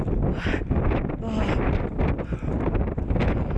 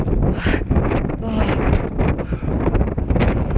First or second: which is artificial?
second